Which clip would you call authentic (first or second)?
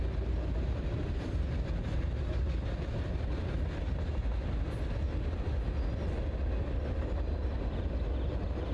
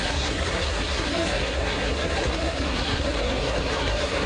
first